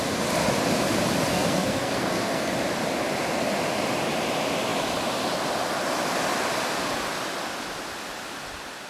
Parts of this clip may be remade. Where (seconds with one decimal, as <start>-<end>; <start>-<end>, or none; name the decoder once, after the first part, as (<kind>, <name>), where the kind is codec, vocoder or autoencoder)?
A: 1.3-2.5 (codec, SNAC)